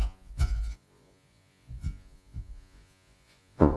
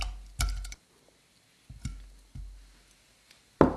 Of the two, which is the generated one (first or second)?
first